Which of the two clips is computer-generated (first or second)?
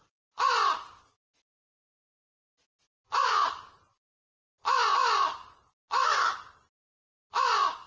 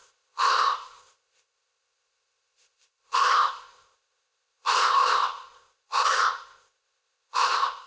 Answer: second